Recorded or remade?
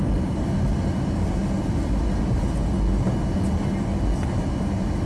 recorded